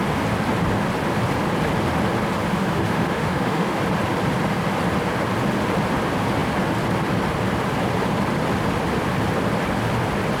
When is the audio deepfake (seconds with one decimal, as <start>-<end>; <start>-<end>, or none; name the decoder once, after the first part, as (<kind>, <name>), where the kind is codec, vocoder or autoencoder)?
2.6-3.8 (autoencoder, DAC-VAE)